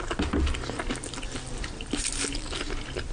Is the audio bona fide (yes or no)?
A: yes